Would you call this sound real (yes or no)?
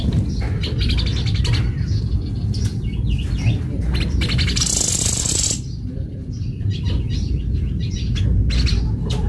yes